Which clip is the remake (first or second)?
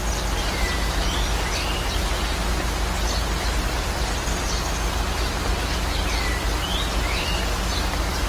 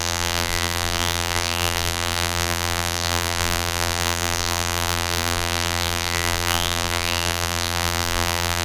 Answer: second